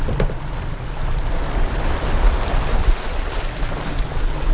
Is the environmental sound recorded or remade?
recorded